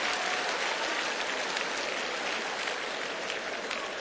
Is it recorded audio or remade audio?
recorded